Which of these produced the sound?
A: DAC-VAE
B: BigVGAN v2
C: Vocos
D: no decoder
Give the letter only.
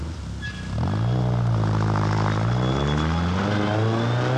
D